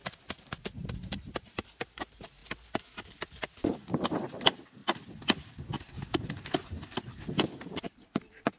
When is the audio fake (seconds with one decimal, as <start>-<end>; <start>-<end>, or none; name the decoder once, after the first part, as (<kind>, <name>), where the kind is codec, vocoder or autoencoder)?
0.0-2.4 (vocoder, BigVGAN v2); 3.3-4.8; 7.6-8.6